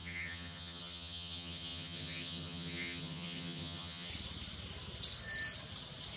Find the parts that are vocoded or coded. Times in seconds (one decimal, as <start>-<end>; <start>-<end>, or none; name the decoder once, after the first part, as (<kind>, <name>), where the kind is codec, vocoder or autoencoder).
0.0-4.1 (vocoder, HiFi-GAN)